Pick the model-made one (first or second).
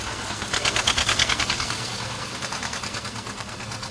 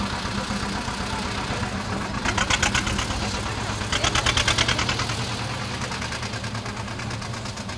first